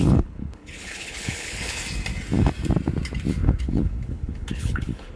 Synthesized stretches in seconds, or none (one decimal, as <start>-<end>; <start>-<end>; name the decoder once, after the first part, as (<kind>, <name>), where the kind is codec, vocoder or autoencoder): 0.0-1.8 (codec, HILCodec); 3.6-5.2